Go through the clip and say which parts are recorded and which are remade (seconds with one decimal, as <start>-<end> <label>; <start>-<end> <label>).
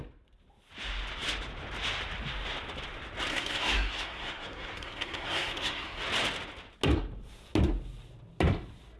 0.0-3.3 recorded; 3.3-6.0 remade; 6.0-9.0 recorded